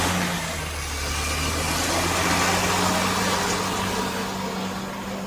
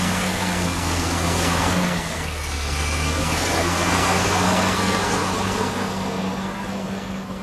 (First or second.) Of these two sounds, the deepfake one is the second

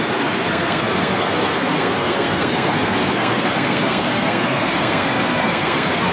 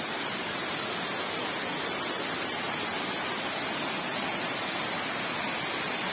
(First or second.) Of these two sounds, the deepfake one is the first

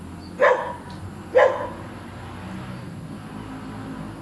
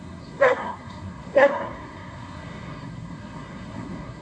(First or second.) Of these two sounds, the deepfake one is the second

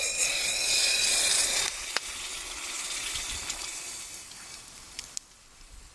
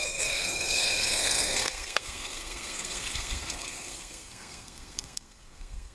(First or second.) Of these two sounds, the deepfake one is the second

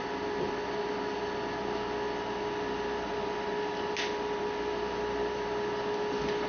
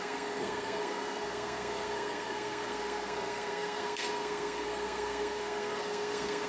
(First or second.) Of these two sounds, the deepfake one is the second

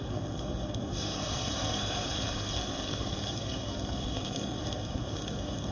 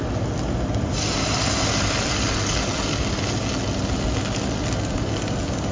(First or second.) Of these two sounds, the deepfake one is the first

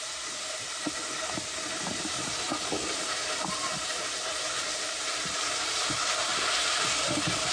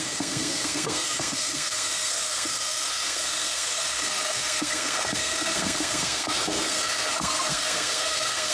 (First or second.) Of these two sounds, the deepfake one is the second